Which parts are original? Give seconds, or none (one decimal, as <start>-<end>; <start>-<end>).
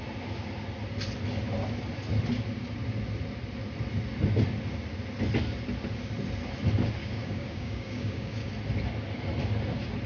0.0-7.0; 8.5-10.1